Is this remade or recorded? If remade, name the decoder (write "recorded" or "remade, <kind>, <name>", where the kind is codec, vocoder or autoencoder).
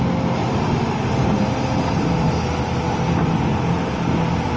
recorded